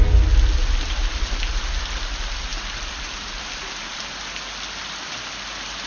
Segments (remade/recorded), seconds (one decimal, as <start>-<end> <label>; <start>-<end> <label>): 0.0-5.9 recorded